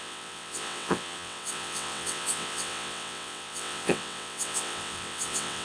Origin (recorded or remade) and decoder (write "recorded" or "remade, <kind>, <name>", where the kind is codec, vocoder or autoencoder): remade, vocoder, WaveNeXt